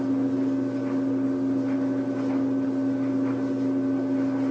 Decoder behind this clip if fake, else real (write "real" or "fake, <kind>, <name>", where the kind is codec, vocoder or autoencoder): real